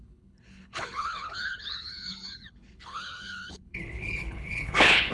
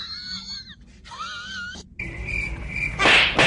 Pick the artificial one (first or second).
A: first